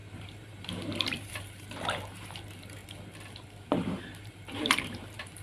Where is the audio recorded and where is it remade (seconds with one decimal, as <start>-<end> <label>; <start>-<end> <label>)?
0.0-2.8 remade; 2.8-4.2 recorded; 4.2-5.4 remade